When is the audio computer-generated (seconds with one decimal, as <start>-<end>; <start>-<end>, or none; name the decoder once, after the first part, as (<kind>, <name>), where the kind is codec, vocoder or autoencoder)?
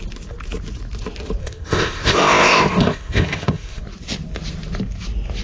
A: 1.4-3.8 (codec, ZipCodec)